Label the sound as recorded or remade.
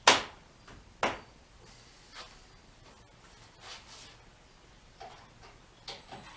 recorded